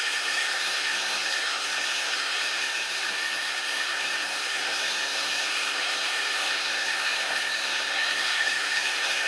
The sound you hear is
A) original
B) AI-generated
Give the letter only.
B